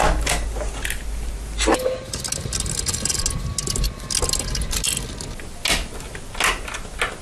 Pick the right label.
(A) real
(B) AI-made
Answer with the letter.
A